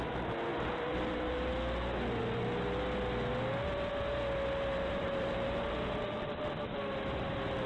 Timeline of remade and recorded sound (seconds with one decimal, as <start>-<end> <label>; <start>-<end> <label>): 0.0-0.5 recorded; 0.5-1.5 remade; 1.5-4.7 recorded; 4.7-6.3 remade; 6.3-7.7 recorded